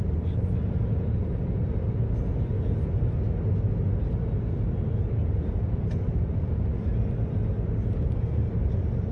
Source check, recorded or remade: recorded